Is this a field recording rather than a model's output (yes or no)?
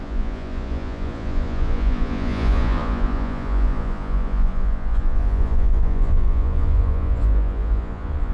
no